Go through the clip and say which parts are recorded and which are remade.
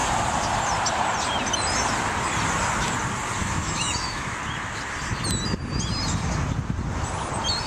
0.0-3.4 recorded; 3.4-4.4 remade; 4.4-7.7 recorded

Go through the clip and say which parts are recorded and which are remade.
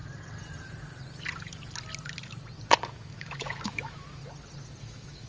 0.0-2.9 recorded; 2.9-4.2 remade; 4.2-4.8 recorded; 4.8-5.3 remade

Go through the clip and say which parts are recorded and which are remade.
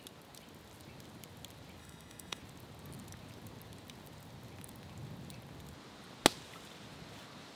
0.0-1.8 recorded; 1.8-2.4 remade; 2.4-7.6 recorded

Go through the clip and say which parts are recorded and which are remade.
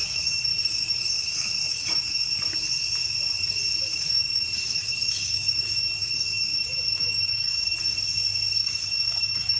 0.0-2.2 remade; 2.2-3.9 recorded; 3.9-7.8 remade; 7.8-8.6 recorded; 8.6-9.6 remade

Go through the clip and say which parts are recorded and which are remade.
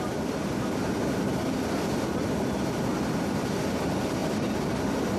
0.0-5.2 recorded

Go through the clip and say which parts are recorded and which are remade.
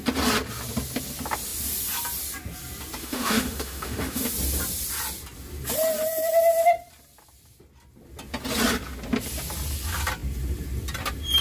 0.0-3.0 recorded; 3.0-4.3 remade; 4.3-11.4 recorded